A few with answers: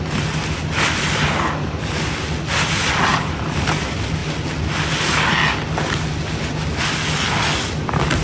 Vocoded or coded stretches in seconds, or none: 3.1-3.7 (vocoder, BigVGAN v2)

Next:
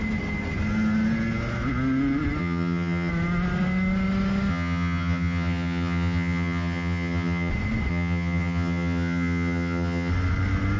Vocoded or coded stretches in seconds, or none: 2.4-3.1 (vocoder, HiFi-GAN); 4.5-7.5; 7.9-10.1